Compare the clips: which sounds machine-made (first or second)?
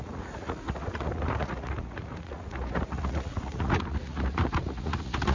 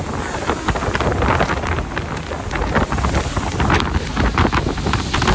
first